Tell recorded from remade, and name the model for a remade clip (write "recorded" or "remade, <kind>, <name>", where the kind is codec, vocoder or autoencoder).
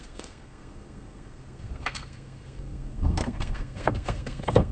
remade, codec, SNAC